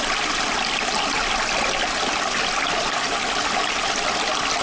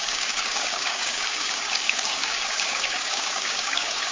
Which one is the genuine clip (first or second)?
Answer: first